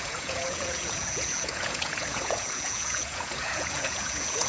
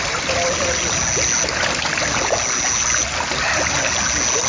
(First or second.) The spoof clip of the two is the first